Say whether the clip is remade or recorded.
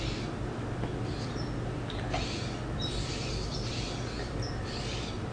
recorded